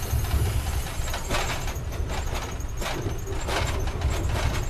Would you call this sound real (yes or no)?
yes